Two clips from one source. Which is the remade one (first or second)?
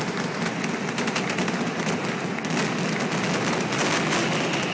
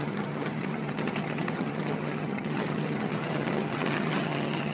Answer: second